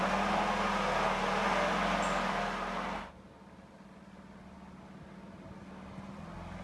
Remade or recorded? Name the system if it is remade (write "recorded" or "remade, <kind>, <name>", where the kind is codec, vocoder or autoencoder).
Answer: recorded